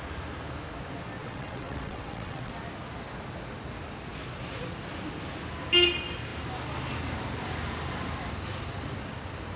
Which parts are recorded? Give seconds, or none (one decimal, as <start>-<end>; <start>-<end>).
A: 0.0-1.2; 2.5-9.6

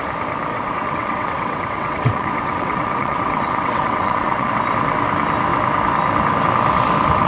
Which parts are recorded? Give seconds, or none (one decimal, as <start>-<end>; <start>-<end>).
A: 0.0-0.5; 4.5-7.3

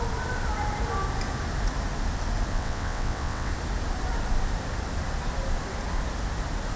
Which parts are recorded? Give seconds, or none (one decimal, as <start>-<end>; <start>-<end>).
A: 0.0-2.5; 3.5-6.8

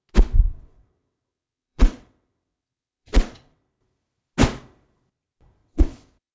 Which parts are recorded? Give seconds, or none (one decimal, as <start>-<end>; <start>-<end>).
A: 0.0-0.5; 3.6-5.6